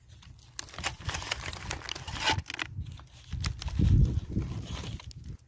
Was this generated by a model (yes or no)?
no